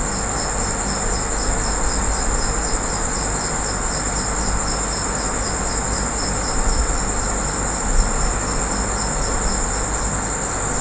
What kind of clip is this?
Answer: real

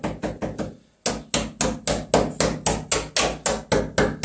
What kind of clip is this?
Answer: real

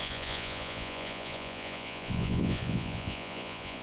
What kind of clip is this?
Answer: fake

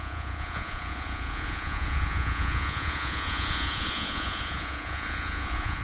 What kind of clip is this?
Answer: fake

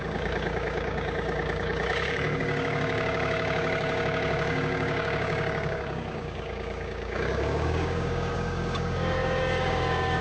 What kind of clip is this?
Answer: fake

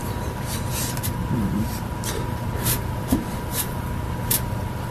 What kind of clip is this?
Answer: fake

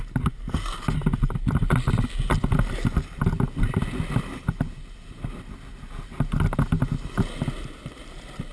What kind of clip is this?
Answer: real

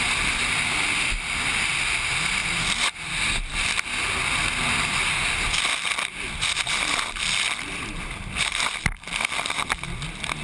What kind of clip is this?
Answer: real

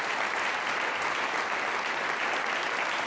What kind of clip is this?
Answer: real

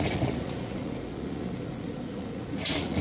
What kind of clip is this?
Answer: fake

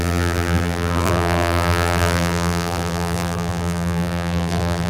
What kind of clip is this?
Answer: fake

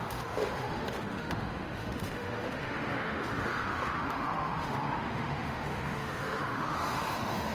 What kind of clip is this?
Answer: fake